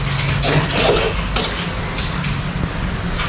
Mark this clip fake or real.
real